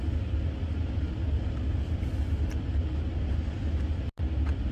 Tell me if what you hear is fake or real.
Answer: real